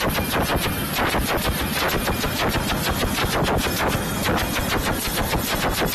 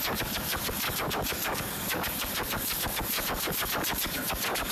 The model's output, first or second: second